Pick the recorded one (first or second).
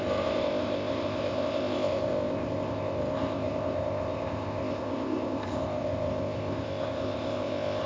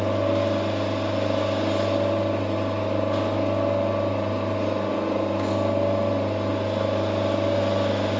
second